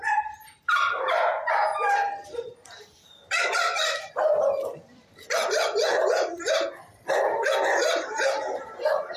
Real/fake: fake